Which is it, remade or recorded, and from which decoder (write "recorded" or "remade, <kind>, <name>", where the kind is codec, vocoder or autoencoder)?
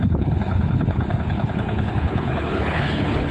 remade, codec, HILCodec